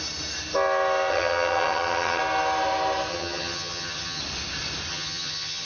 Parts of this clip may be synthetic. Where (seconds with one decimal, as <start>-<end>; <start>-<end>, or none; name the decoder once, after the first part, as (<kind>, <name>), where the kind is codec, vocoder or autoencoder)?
1.1-2.2 (vocoder, HiFi-GAN); 3.1-4.2; 4.9-5.7